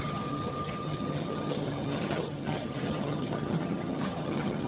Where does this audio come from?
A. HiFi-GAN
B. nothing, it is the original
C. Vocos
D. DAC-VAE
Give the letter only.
A